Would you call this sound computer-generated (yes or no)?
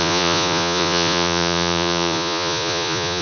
yes